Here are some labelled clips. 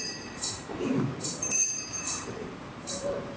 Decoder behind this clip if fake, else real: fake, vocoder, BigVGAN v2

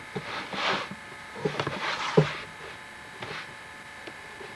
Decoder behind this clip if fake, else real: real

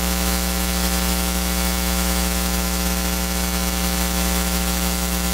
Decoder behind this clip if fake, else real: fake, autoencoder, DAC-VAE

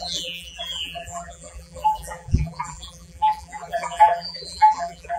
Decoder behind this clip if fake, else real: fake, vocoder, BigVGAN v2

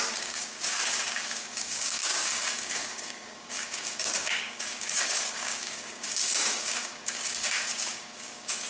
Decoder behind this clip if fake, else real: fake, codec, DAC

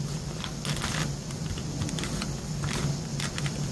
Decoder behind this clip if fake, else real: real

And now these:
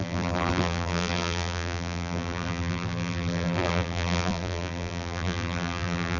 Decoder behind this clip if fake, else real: fake, vocoder, BigVGAN v2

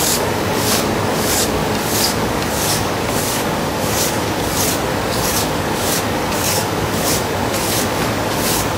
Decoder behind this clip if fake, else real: fake, codec, DAC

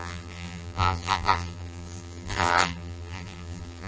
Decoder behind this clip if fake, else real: fake, vocoder, BigVGAN v2